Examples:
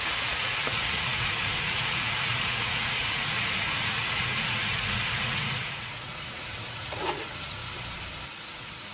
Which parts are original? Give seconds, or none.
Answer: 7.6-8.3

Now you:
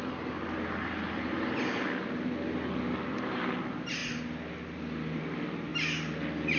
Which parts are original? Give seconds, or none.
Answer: 0.0-6.6

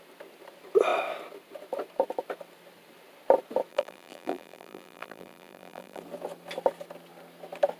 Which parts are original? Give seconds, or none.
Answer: 0.0-3.7; 6.0-7.8

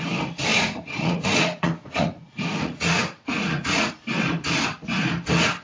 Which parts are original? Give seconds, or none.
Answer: 0.0-0.5; 3.9-5.6

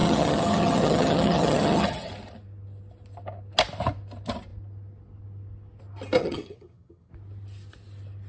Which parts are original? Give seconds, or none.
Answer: 2.1-6.2; 7.1-8.3

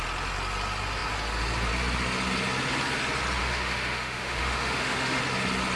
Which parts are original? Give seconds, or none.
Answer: 0.0-3.4; 5.2-5.8